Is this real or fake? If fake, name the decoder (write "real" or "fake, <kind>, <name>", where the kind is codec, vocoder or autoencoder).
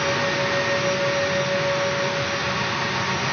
real